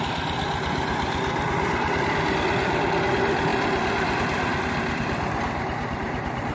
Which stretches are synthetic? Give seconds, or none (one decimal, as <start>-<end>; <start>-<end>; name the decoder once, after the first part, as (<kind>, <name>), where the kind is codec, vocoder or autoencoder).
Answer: none